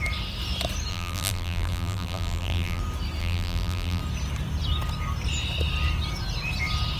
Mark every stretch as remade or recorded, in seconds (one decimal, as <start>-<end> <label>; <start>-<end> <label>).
0.0-0.9 recorded; 0.9-2.8 remade; 2.8-3.2 recorded; 3.2-4.0 remade; 4.0-7.0 recorded